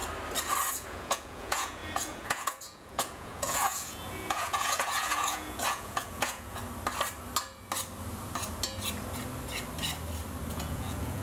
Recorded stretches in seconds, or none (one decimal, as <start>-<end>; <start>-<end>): 0.0-0.7; 6.6-10.5